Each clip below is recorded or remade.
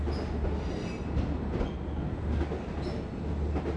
recorded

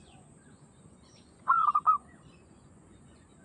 remade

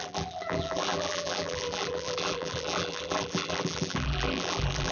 remade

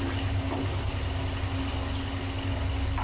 recorded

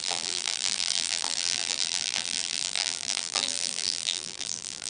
remade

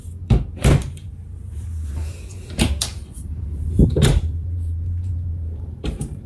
remade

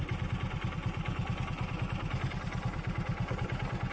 recorded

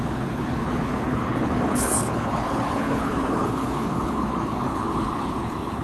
remade